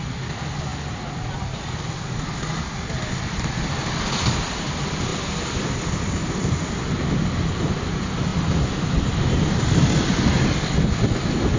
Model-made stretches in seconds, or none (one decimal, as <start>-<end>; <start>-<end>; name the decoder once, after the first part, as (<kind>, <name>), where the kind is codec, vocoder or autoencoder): none